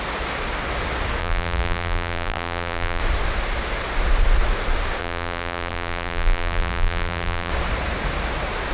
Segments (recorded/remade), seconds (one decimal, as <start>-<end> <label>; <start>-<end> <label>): 0.0-1.2 recorded; 1.2-3.0 remade; 3.0-5.0 recorded; 5.0-7.5 remade; 7.5-8.7 recorded